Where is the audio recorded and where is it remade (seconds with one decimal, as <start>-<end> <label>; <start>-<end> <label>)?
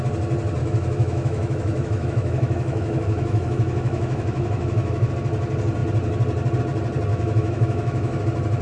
0.0-0.6 recorded; 0.6-5.1 remade; 5.1-7.1 recorded; 7.1-8.2 remade; 8.2-8.6 recorded